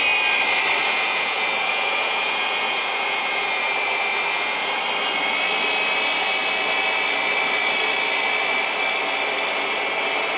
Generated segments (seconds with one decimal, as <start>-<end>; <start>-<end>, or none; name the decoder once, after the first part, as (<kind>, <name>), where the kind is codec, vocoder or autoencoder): 0.8-4.8 (vocoder, Vocos)